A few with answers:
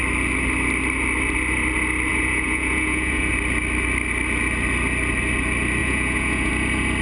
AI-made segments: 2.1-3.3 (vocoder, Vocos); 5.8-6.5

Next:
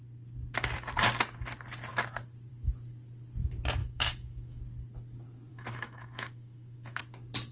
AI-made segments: 3.8-4.6 (autoencoder, DAC-VAE); 5.5-7.0

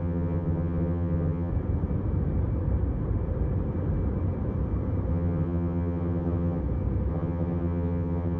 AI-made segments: 0.0-1.5 (vocoder, HiFi-GAN); 5.1-6.6; 7.1-8.4

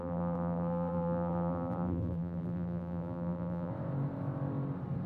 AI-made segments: 0.0-3.7 (vocoder, BigVGAN v2)